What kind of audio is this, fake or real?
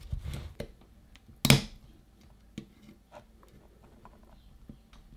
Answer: real